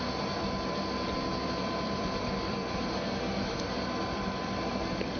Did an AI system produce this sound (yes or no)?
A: yes